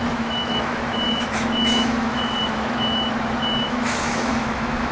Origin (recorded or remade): remade